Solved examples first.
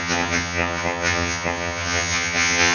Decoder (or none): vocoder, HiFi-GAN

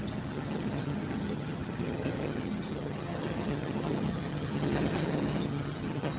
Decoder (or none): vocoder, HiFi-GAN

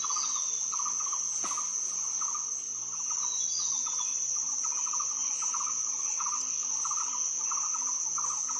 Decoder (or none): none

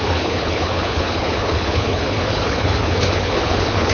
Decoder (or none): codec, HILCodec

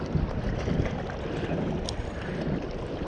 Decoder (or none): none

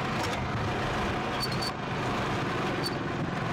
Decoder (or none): none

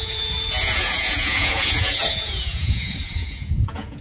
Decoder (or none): vocoder, Vocos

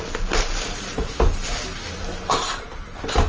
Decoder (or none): none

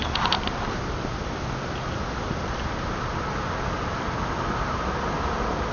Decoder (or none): none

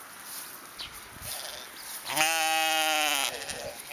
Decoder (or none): none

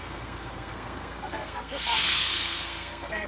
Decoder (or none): codec, SNAC